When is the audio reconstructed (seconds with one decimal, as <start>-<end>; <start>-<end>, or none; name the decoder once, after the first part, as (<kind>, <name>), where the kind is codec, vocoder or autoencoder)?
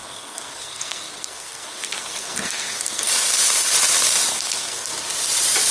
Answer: 0.0-3.1 (codec, SNAC); 4.3-4.9